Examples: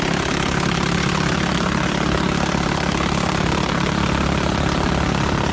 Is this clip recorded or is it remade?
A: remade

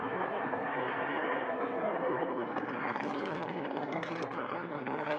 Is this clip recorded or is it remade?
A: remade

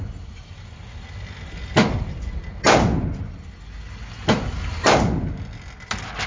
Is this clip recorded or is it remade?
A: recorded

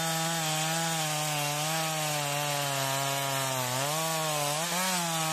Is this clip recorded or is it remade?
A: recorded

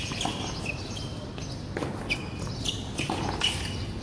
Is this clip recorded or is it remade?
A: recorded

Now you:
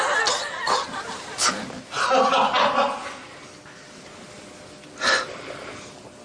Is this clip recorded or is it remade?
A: recorded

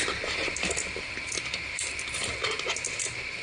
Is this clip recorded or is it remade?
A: recorded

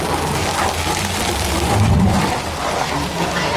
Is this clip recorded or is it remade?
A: recorded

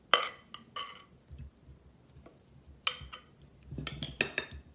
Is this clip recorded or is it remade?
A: recorded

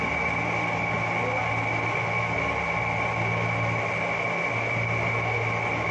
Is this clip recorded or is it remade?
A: recorded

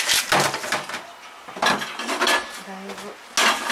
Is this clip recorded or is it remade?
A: recorded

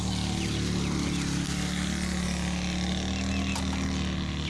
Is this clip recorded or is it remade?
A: recorded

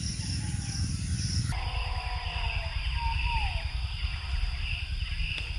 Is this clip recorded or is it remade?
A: recorded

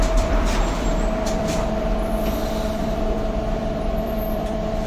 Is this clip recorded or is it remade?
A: remade